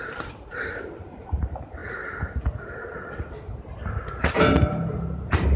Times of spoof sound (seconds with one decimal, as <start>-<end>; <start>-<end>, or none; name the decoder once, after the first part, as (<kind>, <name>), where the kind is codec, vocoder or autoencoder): 0.0-1.8 (vocoder, BigVGAN v2)